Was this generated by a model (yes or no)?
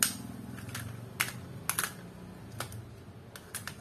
no